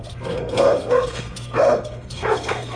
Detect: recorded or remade remade